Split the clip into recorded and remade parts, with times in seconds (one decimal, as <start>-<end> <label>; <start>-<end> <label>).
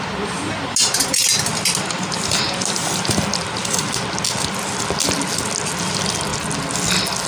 0.0-7.3 recorded